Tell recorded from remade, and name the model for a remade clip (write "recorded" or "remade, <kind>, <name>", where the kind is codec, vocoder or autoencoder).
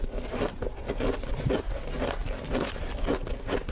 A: recorded